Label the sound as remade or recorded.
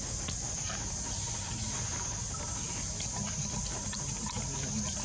recorded